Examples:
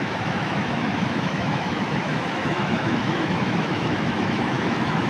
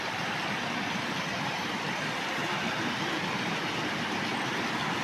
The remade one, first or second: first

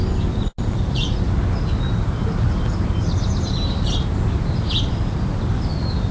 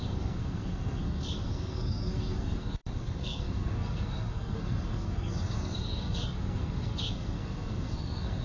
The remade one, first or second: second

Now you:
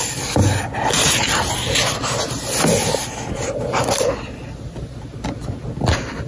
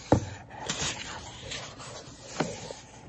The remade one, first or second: second